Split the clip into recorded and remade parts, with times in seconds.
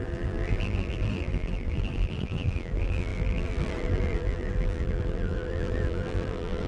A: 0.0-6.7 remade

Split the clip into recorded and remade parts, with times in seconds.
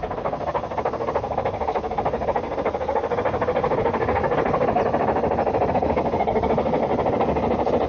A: 0.0-4.8 remade; 4.8-5.7 recorded; 5.7-6.8 remade; 6.8-7.9 recorded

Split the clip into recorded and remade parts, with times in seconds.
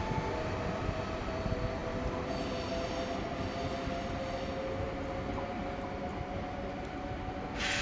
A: 0.0-7.8 recorded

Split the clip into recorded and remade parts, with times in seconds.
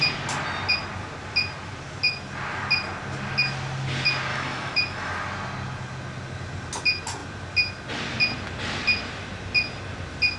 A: 0.0-4.3 recorded; 4.3-5.1 remade; 5.1-10.4 recorded